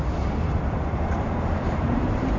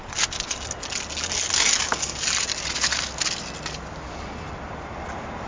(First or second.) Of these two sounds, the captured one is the second